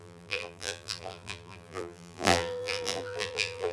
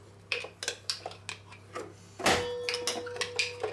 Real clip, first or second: second